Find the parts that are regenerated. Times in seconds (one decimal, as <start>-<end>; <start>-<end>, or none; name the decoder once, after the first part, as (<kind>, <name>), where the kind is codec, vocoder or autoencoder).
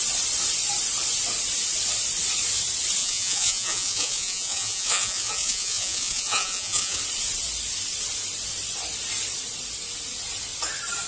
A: 3.0-7.0 (vocoder, Vocos)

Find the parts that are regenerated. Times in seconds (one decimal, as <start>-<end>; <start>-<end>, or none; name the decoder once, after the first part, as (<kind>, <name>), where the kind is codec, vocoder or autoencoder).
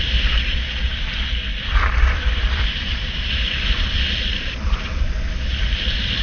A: 0.0-6.2 (vocoder, BigVGAN v2)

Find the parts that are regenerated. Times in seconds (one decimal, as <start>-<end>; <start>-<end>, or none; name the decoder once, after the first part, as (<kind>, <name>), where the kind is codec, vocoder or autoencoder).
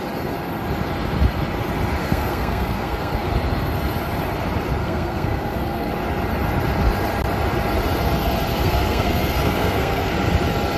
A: 2.0-3.3 (codec, SNAC); 4.8-5.9; 8.5-10.1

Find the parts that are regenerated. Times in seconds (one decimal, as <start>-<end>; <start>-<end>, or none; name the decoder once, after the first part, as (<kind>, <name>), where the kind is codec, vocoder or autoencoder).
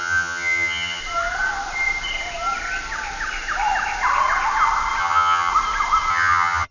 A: 0.0-1.0 (vocoder, HiFi-GAN); 5.0-5.5; 6.1-6.7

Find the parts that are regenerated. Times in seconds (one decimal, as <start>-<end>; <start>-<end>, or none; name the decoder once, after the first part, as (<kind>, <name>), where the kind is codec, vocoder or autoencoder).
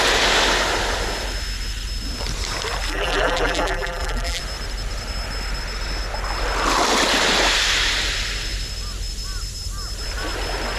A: 2.9-4.4 (vocoder, BigVGAN v2)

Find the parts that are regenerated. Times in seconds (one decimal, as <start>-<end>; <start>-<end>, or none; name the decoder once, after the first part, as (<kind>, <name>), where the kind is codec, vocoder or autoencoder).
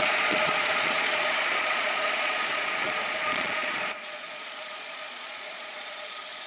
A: 0.0-6.5 (vocoder, Vocos)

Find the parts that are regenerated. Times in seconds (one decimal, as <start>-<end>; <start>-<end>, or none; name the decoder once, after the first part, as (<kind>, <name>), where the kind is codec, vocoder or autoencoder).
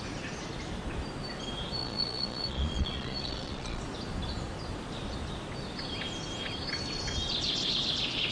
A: 1.8-3.8 (vocoder, Vocos)